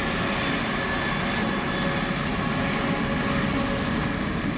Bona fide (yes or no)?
yes